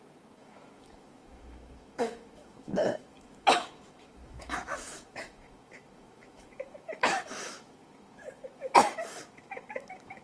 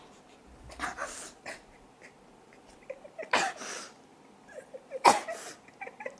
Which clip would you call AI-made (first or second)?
first